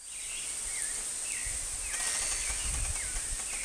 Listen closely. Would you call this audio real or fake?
real